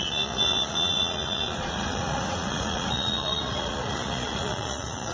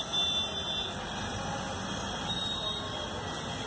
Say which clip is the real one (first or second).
second